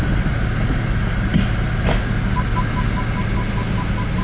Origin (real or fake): real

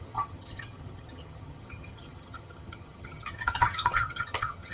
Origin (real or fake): fake